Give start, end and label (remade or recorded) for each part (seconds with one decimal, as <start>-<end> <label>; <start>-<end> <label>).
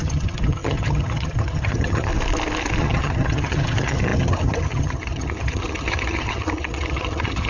0.0-2.1 remade; 2.1-2.8 recorded; 2.8-7.5 remade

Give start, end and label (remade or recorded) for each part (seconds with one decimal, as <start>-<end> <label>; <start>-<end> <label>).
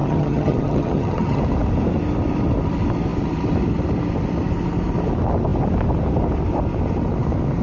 0.0-1.4 remade; 1.4-7.6 recorded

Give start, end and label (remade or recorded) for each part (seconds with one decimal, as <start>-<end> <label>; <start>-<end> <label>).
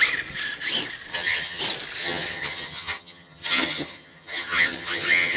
0.0-1.1 recorded; 1.1-1.6 remade; 1.6-2.0 recorded; 2.0-5.4 remade